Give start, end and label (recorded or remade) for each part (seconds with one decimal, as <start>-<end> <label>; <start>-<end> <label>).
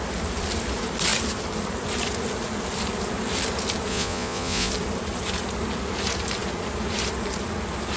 0.0-3.9 recorded; 3.9-4.7 remade; 4.7-8.0 recorded